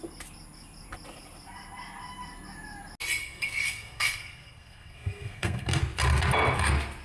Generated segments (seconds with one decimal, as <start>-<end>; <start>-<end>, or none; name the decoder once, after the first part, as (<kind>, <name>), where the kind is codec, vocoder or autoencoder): 3.2-5.8 (codec, SNAC)